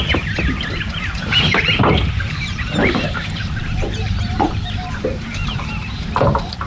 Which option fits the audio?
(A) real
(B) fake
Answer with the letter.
B